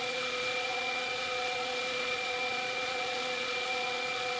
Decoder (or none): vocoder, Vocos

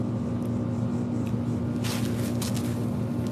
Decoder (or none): none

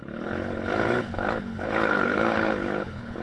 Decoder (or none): codec, HILCodec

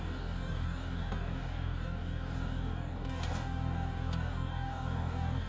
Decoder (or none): codec, DAC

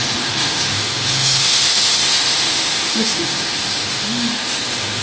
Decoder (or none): autoencoder, DAC-VAE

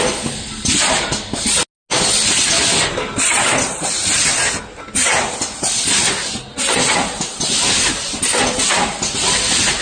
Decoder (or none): none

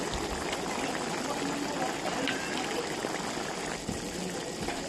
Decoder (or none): none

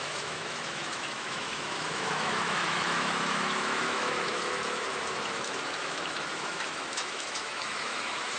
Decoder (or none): autoencoder, DAC-VAE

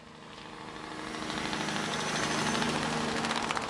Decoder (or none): none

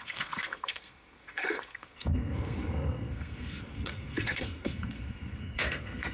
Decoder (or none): codec, SNAC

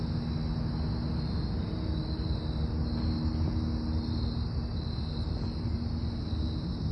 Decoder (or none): none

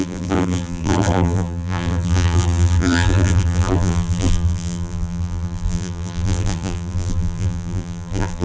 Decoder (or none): vocoder, BigVGAN v2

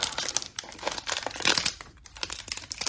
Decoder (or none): none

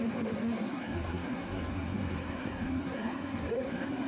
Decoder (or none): codec, SNAC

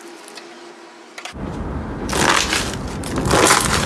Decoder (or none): none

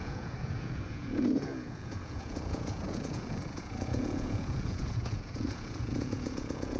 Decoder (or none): vocoder, Vocos